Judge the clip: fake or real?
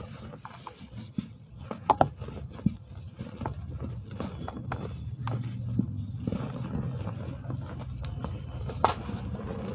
real